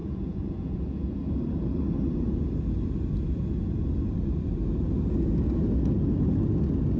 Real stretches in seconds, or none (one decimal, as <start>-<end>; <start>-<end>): 1.2-7.0